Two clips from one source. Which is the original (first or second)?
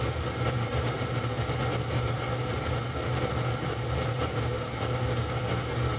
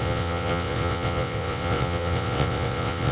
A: first